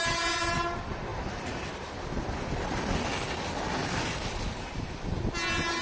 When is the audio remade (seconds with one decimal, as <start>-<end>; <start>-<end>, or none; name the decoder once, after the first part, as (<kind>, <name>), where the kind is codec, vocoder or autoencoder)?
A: none